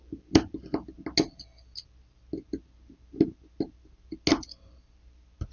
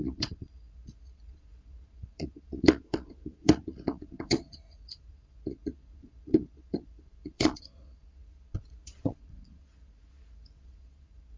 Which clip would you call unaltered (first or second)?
first